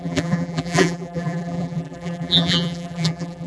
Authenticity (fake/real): fake